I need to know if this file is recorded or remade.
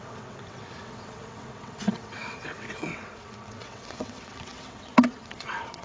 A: remade